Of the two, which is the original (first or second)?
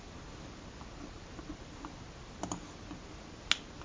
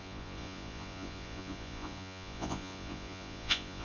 first